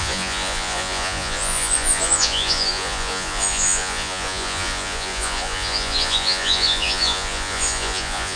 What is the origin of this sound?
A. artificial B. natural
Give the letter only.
A